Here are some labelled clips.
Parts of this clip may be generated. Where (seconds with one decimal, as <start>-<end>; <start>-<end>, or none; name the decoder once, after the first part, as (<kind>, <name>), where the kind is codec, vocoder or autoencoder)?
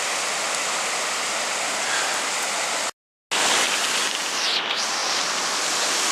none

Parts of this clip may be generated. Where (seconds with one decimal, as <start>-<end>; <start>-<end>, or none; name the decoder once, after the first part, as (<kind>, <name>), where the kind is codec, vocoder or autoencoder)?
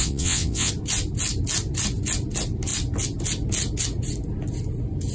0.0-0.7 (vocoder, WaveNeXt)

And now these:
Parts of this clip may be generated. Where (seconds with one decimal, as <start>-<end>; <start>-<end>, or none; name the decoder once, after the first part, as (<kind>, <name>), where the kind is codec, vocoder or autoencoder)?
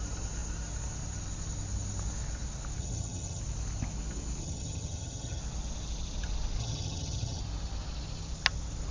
2.8-3.4 (vocoder, HiFi-GAN); 4.4-5.4; 6.6-7.4